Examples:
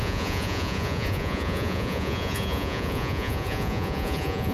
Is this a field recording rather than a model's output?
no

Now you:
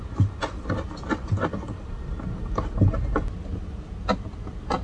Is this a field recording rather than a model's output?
yes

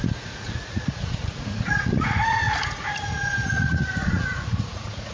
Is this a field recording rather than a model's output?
no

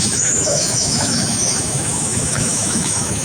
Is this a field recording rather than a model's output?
no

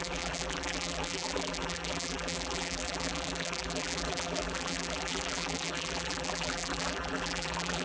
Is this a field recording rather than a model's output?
no